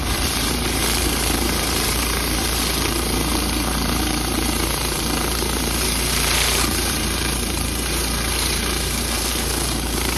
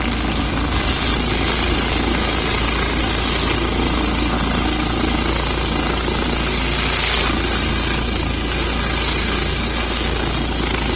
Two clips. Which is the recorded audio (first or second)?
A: second